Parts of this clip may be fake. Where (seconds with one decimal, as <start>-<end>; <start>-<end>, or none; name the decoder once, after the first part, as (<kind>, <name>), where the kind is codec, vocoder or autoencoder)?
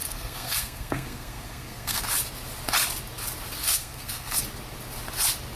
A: 0.0-2.0 (codec, SNAC); 3.6-4.4